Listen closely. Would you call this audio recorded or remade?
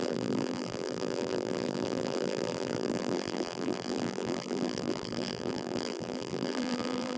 remade